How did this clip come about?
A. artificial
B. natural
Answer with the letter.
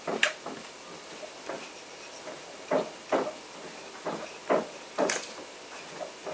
B